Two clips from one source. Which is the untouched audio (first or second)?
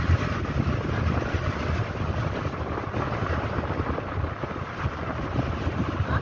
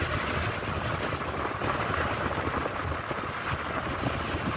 second